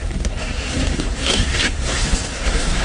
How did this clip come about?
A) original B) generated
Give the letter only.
B